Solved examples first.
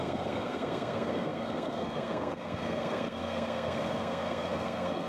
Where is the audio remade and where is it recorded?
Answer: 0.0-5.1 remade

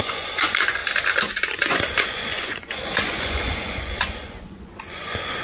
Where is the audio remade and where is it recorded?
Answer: 0.0-0.8 remade; 0.8-1.3 recorded; 1.3-5.4 remade

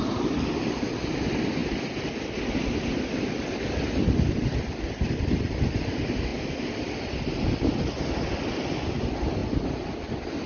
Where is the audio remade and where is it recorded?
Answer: 0.0-1.6 recorded; 1.6-2.4 remade; 2.4-9.4 recorded; 9.4-10.5 remade

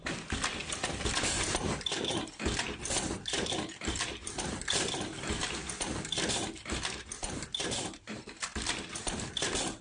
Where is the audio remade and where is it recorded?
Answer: 0.0-0.6 recorded; 0.6-2.8 remade; 2.8-9.8 recorded

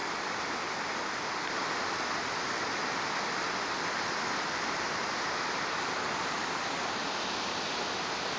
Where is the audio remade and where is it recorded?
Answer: 0.0-8.4 recorded

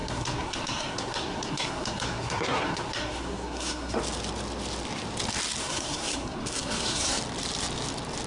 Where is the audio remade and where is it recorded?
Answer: 0.0-4.0 remade; 4.0-5.6 recorded; 5.6-7.2 remade; 7.2-8.3 recorded

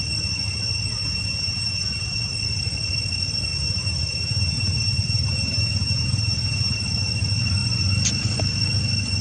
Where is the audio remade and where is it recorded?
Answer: 0.0-1.0 recorded; 1.0-2.3 remade; 2.3-3.5 recorded; 3.5-6.8 remade; 6.8-9.2 recorded